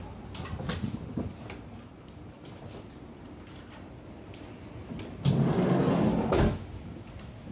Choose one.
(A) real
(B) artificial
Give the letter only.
A